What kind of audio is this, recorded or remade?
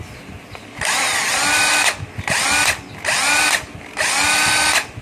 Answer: recorded